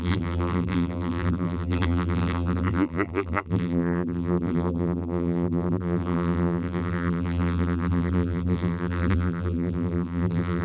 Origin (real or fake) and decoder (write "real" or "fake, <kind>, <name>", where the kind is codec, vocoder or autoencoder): fake, vocoder, BigVGAN v2